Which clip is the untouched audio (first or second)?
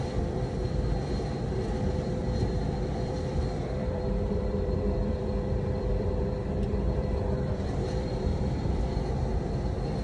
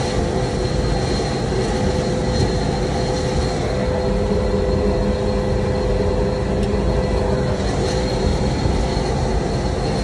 second